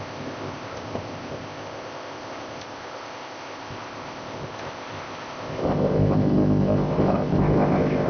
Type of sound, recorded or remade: remade